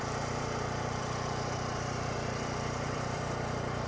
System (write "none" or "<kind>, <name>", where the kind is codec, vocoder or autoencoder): vocoder, BigVGAN v2